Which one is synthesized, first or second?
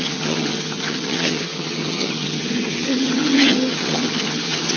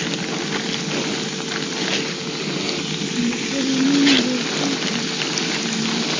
first